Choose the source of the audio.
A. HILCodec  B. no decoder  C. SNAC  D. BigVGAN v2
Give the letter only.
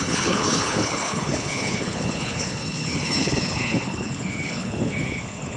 A